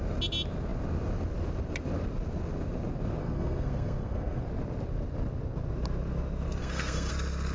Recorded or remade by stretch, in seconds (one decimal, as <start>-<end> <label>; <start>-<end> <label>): 0.0-3.2 recorded; 3.2-4.4 remade; 4.4-6.6 recorded; 6.6-7.1 remade; 7.1-7.5 recorded